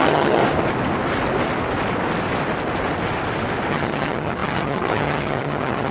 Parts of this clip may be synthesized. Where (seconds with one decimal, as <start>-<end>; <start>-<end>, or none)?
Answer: 0.0-0.4; 3.7-5.9